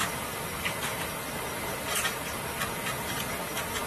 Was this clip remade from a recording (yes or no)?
yes